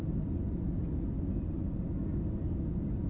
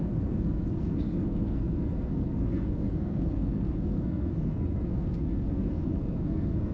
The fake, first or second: second